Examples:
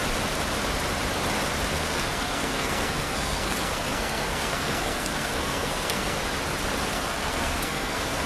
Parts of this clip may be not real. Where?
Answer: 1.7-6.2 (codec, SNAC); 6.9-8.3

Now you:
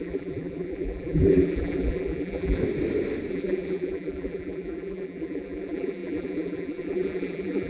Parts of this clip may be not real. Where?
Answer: 0.0-2.6 (vocoder, BigVGAN v2); 3.3-7.7

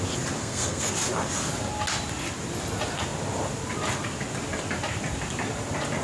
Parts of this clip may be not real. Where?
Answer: 0.4-0.9 (codec, SNAC)

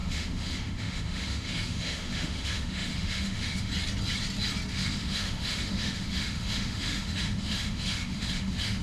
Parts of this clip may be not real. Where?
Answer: 0.0-3.7 (autoencoder, DAC-VAE); 4.7-8.8

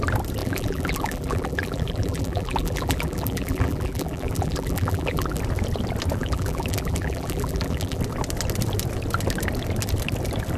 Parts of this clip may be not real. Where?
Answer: 0.4-5.4 (vocoder, BigVGAN v2); 6.2-8.0

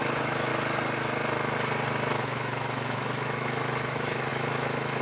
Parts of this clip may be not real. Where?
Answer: 0.0-0.5 (autoencoder, DAC-VAE); 2.2-5.0

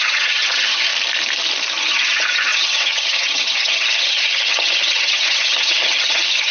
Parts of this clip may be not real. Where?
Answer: 0.0-0.9 (vocoder, HiFi-GAN); 1.8-6.5

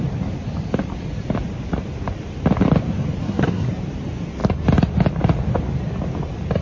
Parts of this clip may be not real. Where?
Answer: 3.2-3.7 (codec, SNAC)